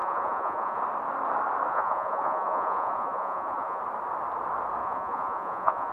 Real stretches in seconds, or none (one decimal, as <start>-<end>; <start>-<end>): 0.8-1.7; 3.8-4.8